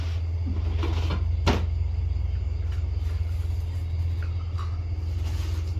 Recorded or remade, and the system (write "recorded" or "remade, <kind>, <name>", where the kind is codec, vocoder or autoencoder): recorded